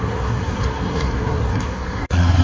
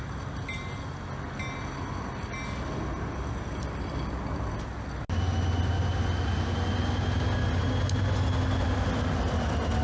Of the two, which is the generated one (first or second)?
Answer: first